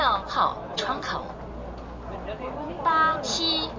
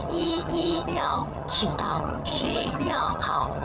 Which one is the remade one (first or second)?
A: second